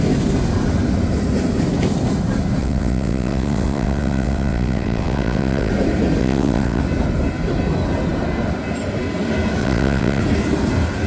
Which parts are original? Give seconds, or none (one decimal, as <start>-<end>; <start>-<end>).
0.0-2.6; 5.7-6.2; 6.8-9.6; 10.2-11.1